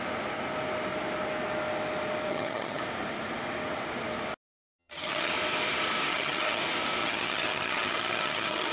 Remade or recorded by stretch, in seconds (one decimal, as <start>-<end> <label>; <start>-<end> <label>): 0.0-2.3 recorded; 2.3-2.8 remade; 2.8-4.8 recorded; 4.8-5.3 remade; 5.3-6.1 recorded; 6.1-6.6 remade; 6.6-7.0 recorded; 7.0-8.7 remade